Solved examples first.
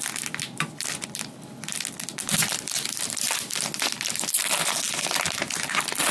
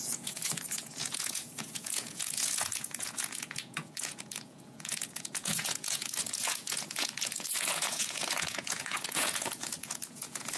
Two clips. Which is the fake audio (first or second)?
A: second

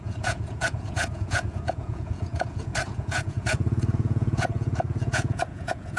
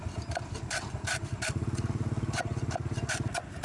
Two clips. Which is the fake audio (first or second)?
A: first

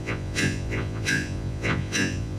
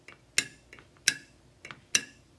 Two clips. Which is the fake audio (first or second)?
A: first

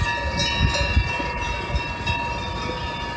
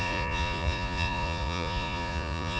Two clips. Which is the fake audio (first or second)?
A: second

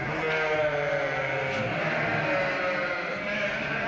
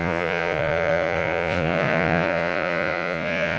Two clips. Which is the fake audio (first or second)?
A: second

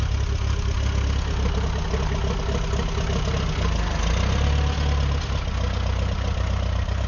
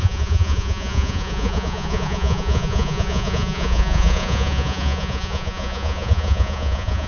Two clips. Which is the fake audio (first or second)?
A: second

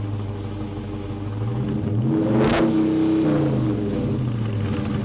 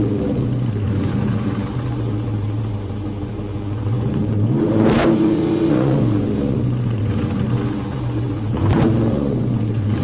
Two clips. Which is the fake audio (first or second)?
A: second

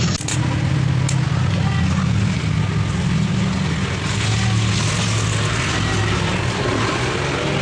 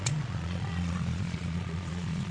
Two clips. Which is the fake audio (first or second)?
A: second